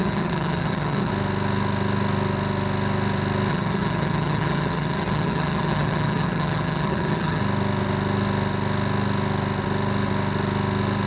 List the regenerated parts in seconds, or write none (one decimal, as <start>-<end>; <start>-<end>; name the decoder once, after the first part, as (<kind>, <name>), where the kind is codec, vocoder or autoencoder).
0.0-1.1 (vocoder, HiFi-GAN); 3.5-7.4